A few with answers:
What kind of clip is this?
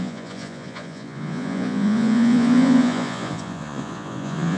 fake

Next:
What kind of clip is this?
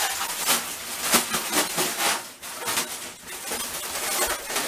real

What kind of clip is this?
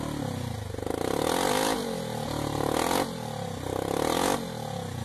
real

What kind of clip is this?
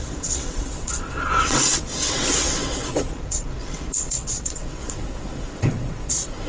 fake